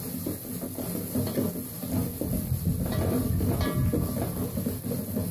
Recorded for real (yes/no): yes